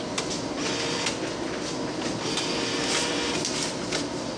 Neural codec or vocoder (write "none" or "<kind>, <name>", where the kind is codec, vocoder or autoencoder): none